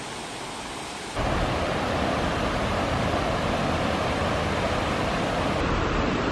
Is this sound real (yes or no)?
yes